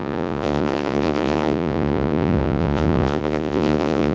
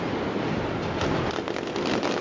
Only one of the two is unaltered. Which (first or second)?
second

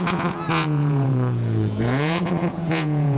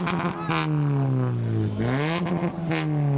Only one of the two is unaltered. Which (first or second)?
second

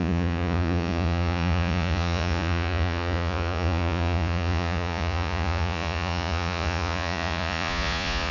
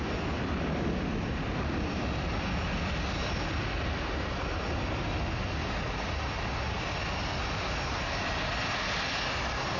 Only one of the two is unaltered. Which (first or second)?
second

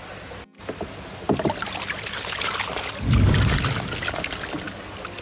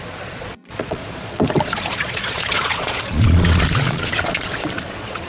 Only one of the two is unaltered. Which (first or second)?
first